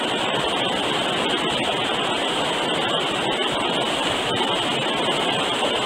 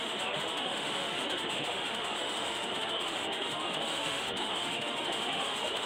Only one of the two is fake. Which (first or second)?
second